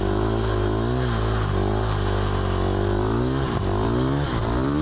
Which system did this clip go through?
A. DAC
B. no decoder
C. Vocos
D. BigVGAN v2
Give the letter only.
B